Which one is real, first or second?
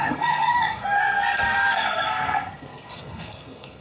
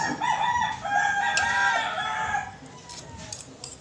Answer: second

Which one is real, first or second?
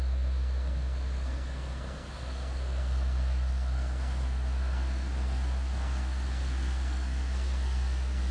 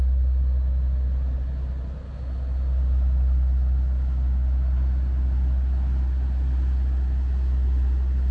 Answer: second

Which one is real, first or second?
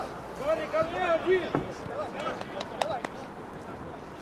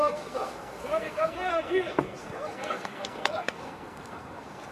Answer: first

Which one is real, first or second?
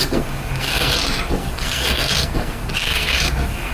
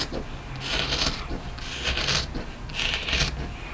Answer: second